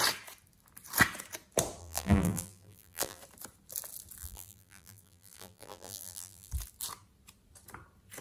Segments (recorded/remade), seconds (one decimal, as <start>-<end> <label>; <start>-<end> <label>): 0.0-1.8 recorded; 1.8-3.2 remade; 3.2-4.2 recorded; 4.2-6.5 remade; 6.5-8.2 recorded